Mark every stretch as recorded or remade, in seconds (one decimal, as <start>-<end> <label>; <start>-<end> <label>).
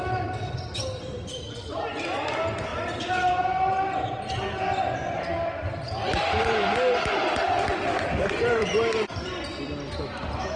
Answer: 0.0-2.7 recorded; 2.7-3.3 remade; 3.3-5.0 recorded; 5.0-10.0 remade; 10.0-10.6 recorded